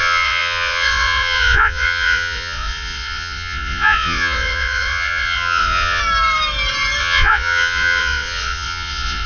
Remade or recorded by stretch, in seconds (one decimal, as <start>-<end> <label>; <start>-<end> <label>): 0.0-6.0 remade; 6.0-7.0 recorded; 7.0-9.3 remade